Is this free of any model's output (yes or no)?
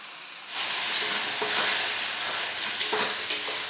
yes